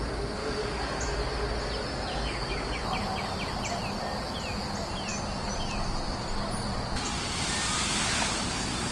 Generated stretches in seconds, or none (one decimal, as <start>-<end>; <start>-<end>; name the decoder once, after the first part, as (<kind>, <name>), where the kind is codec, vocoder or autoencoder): 0.4-1.0 (codec, DAC); 2.1-2.8